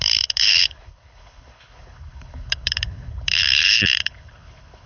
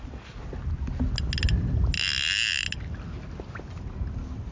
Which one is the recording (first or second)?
second